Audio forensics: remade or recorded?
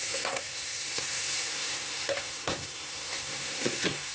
remade